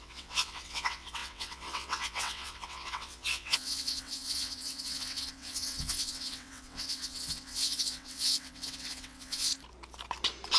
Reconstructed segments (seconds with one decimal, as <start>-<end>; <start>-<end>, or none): 0.0-9.5